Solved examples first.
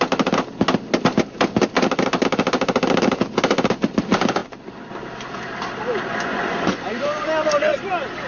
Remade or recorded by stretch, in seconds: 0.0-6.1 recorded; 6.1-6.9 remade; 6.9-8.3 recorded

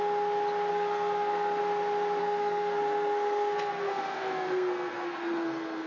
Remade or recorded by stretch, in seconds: 0.0-0.7 recorded; 0.7-1.6 remade; 1.6-2.2 recorded; 2.2-5.9 remade